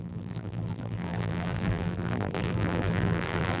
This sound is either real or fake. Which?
fake